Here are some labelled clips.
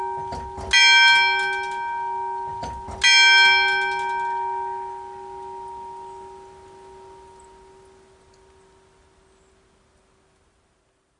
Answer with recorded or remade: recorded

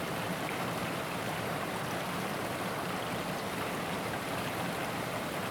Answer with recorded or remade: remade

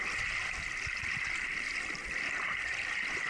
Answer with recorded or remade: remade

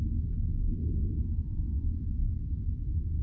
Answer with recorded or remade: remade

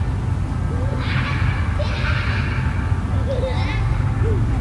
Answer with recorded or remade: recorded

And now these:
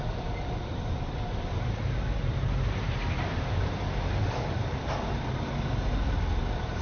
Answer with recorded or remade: remade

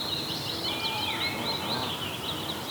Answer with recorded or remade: recorded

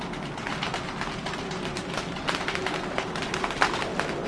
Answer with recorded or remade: recorded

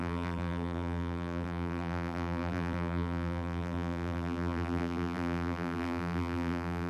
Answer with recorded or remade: remade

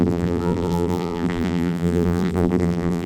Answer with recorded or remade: remade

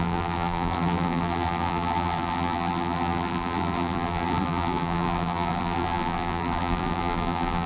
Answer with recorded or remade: remade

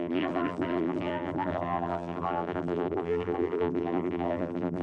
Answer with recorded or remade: remade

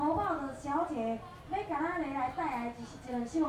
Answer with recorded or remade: recorded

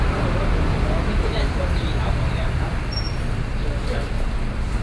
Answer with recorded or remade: recorded